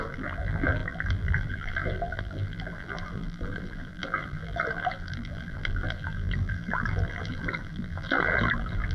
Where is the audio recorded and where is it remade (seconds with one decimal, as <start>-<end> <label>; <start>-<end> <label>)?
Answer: 0.0-8.9 remade